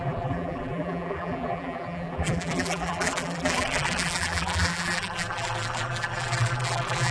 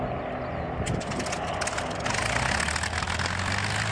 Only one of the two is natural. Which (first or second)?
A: second